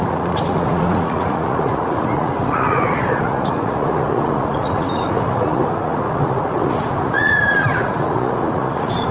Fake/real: fake